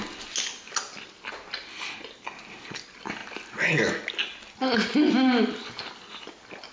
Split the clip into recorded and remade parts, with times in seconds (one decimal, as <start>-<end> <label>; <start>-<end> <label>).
0.0-6.7 recorded

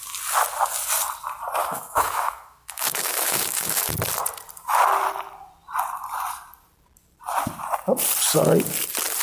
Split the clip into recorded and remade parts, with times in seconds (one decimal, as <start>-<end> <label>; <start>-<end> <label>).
0.0-1.6 recorded; 1.6-3.9 remade; 3.9-9.2 recorded

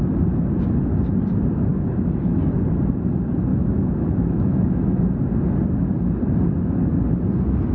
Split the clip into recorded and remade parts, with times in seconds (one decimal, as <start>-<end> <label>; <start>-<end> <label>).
0.0-1.7 recorded; 1.7-2.4 remade; 2.4-3.5 recorded; 3.5-5.0 remade; 5.0-7.7 recorded